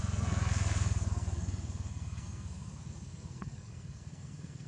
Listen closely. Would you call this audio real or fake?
fake